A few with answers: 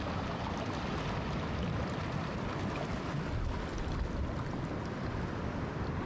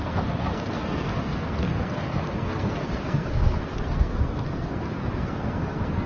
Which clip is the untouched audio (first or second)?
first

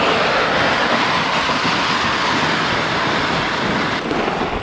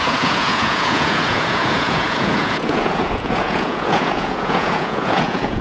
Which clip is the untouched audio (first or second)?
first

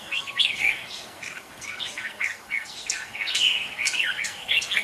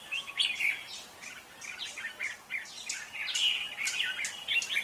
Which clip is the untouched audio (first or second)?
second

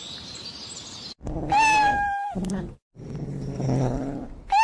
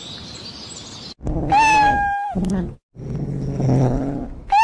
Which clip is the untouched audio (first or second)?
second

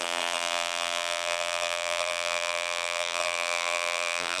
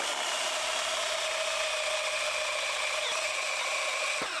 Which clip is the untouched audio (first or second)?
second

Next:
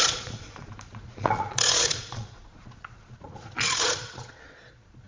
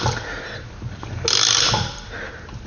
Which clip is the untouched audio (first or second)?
second